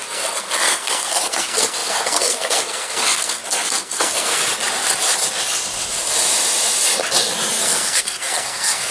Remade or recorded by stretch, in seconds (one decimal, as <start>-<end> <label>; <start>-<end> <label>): 0.0-4.4 remade; 4.4-7.5 recorded; 7.5-8.9 remade